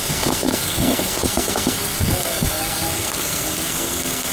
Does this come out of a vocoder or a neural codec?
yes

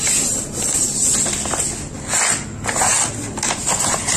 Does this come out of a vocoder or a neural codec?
no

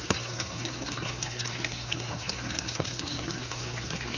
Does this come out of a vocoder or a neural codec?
yes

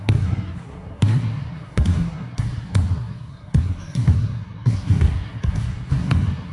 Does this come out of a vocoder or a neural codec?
yes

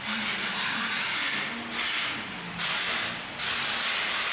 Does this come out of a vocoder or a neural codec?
no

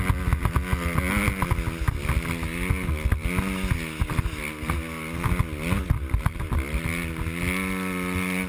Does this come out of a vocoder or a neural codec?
no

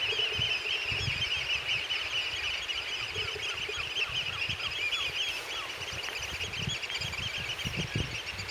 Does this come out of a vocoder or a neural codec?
no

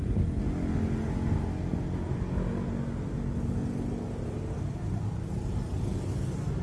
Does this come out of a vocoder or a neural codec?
no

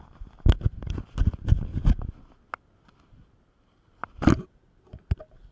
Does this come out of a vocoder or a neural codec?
no